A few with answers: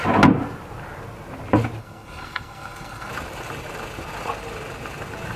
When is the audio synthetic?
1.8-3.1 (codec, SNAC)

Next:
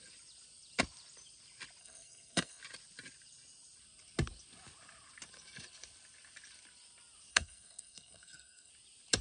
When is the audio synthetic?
1.8-2.6 (codec, SNAC); 7.3-8.7

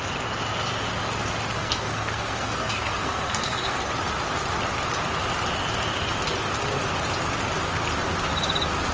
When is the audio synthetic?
1.6-3.9 (codec, SNAC)

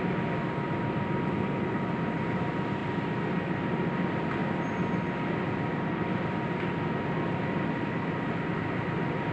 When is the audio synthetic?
none

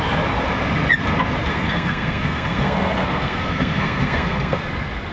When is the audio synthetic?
1.5-4.6 (codec, SNAC)

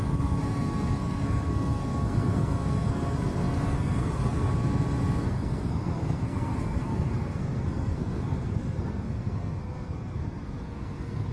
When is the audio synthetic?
0.0-4.5 (codec, SNAC); 5.2-11.3